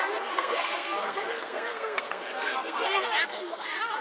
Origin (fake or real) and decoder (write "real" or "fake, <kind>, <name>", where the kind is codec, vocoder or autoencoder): fake, codec, SNAC